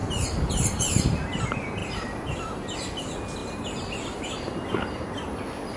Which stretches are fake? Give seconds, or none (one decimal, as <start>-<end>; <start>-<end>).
0.0-1.4; 1.8-2.6